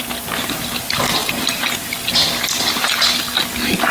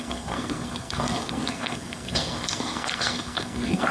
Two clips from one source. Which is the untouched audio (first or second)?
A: first